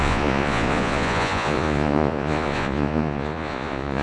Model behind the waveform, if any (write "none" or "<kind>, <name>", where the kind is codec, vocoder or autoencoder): vocoder, Vocos